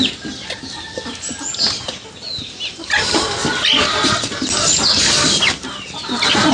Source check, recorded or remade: recorded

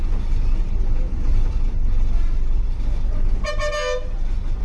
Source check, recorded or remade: recorded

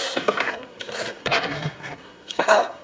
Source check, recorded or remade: remade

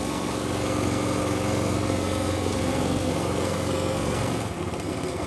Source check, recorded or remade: remade